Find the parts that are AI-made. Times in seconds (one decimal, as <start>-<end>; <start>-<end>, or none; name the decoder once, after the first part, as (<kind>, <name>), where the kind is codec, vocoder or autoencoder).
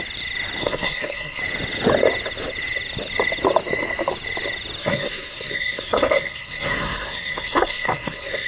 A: 0.6-1.4 (codec, SNAC); 4.8-8.5